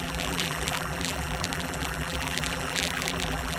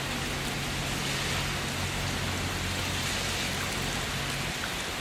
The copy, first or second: first